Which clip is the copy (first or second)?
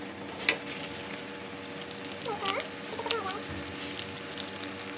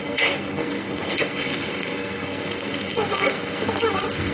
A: second